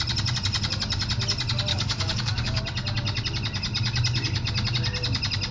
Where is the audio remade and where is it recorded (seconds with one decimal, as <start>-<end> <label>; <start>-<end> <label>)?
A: 0.0-1.7 recorded; 1.7-2.6 remade; 2.6-5.5 recorded